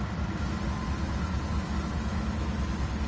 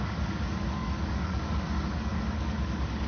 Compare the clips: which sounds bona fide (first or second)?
first